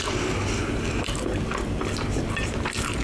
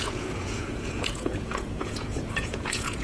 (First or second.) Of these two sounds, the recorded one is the first